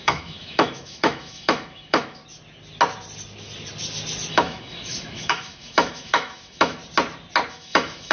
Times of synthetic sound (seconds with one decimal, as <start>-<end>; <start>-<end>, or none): 0.0-2.2; 4.3-6.8; 7.5-8.1